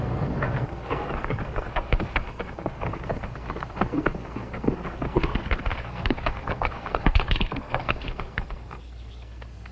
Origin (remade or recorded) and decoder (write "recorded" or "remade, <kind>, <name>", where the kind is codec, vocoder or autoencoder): remade, codec, SNAC